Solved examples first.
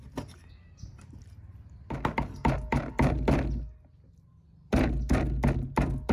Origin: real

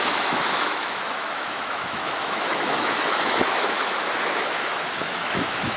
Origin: fake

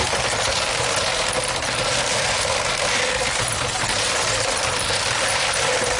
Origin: real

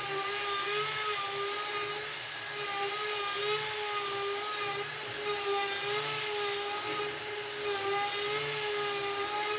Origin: real